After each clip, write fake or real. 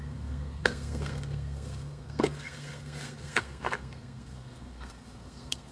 fake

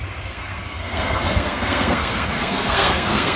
fake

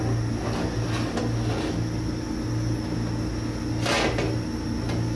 real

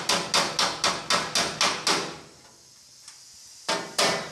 real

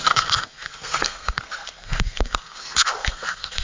fake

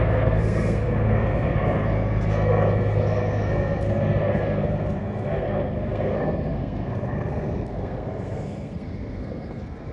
fake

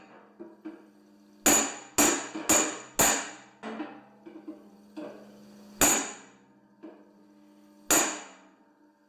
real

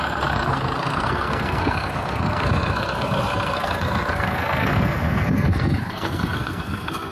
fake